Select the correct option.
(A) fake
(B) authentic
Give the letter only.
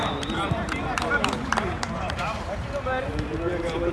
A